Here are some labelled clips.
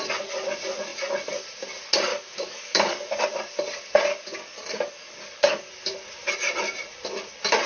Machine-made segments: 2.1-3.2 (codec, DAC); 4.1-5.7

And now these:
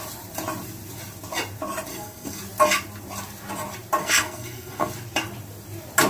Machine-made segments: 1.9-2.4 (codec, SNAC); 4.0-4.9

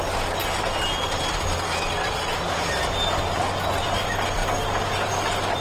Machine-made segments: none